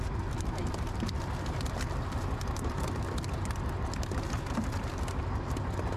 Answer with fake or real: real